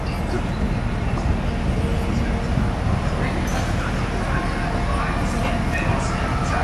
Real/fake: real